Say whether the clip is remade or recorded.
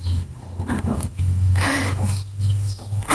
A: remade